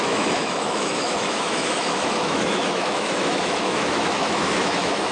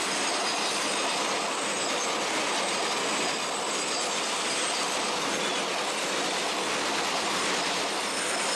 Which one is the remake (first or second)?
first